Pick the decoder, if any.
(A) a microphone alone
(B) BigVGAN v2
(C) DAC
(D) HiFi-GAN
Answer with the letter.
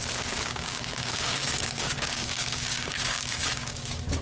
C